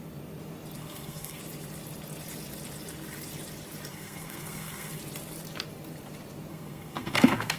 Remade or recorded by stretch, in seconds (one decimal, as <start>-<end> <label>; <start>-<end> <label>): 0.0-0.8 recorded; 0.8-1.4 remade; 1.4-3.9 recorded; 3.9-5.0 remade; 5.0-6.5 recorded; 6.5-7.6 remade